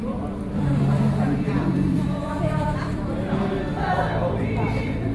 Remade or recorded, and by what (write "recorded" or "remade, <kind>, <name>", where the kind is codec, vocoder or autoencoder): remade, vocoder, BigVGAN v2